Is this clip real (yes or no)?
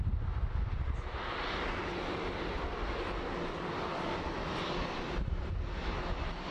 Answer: yes